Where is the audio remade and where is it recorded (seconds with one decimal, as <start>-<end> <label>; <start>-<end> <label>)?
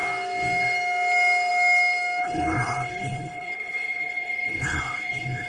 0.0-2.2 recorded; 2.2-5.5 remade